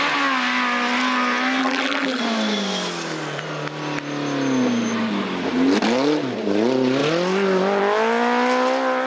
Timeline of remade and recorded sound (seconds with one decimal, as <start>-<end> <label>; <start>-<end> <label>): 0.0-1.6 recorded; 1.6-2.2 remade; 2.2-9.1 recorded